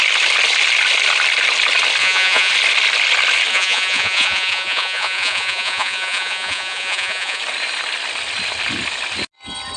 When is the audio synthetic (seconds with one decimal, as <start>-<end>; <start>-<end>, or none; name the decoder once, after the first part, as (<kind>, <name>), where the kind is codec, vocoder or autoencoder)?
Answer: 2.0-2.5 (vocoder, Vocos); 3.5-7.4